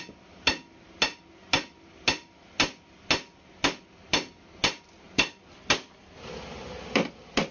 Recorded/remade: recorded